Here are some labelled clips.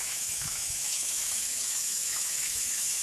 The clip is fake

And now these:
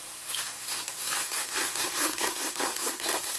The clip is fake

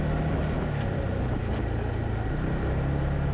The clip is real